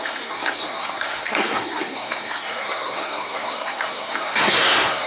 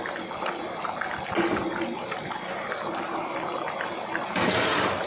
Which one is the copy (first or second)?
first